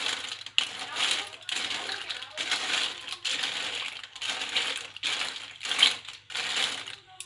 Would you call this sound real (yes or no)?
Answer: yes